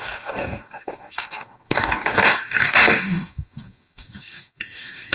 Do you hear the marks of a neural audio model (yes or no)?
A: yes